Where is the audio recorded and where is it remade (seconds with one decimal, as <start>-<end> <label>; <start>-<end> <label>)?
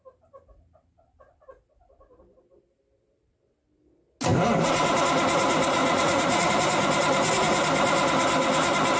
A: 0.0-5.8 recorded; 5.8-6.5 remade; 6.5-9.0 recorded